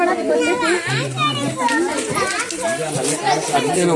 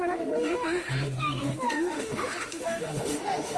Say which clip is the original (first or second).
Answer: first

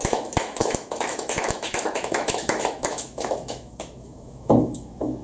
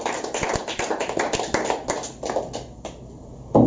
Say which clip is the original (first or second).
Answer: second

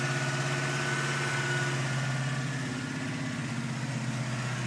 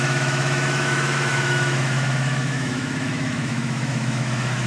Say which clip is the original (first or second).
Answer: first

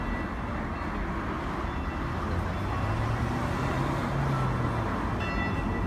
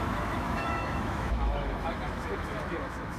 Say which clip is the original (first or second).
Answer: first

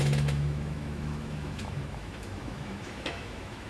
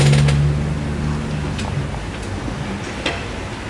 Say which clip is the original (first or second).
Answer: second